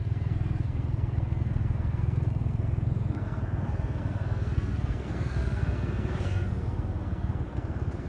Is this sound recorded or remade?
remade